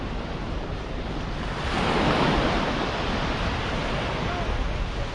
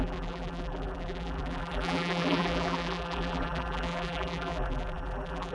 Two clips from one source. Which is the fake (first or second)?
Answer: second